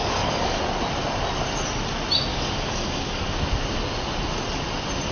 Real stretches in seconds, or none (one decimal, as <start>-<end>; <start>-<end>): 0.6-2.3; 3.2-5.1